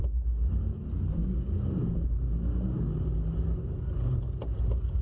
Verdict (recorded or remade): recorded